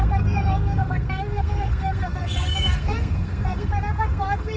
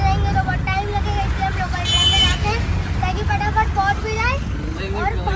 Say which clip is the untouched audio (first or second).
second